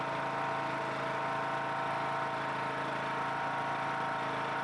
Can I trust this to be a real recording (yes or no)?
yes